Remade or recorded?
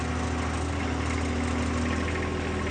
recorded